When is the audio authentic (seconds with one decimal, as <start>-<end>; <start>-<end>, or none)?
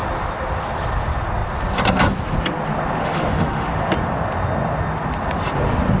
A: 0.0-3.0; 3.7-6.0